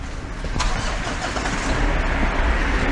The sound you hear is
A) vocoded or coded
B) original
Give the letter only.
B